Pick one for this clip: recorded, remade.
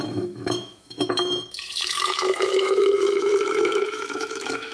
remade